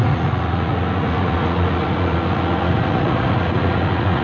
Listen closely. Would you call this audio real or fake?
fake